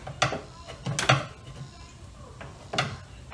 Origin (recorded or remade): recorded